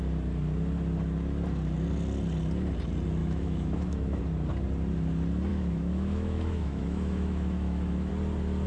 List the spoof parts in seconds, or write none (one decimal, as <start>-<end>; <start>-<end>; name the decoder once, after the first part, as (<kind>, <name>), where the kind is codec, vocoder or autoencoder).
3.2-4.2 (autoencoder, DAC-VAE); 5.5-8.1